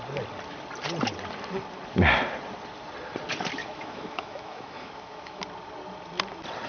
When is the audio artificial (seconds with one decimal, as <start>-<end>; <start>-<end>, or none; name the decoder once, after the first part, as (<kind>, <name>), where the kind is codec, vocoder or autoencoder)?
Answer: 3.6-5.4 (autoencoder, DAC-VAE)